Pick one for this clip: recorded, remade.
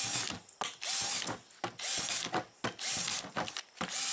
recorded